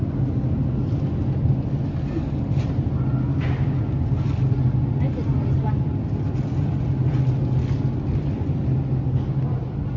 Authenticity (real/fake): real